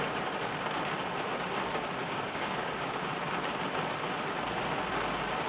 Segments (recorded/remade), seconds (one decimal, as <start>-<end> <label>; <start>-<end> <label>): 0.0-2.0 recorded; 2.0-3.1 remade; 3.1-5.5 recorded